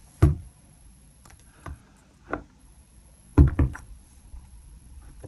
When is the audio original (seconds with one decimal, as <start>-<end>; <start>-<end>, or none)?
1.8-2.6